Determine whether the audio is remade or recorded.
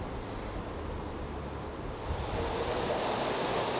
recorded